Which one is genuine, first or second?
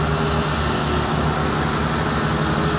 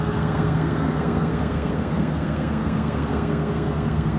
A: first